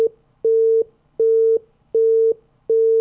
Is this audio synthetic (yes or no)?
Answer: no